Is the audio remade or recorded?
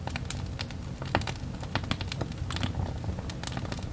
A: recorded